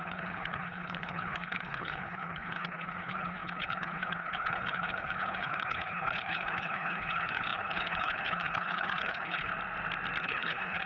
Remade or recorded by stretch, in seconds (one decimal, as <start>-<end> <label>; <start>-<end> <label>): 0.0-9.5 remade; 9.5-10.2 recorded; 10.2-10.9 remade